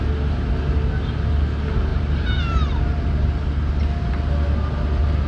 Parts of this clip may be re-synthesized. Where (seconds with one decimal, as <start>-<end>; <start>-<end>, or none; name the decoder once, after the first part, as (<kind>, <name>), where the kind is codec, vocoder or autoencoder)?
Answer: 1.9-3.1 (vocoder, BigVGAN v2)